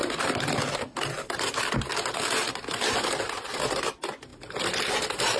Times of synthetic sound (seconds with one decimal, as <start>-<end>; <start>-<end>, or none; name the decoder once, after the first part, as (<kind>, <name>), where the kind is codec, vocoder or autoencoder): none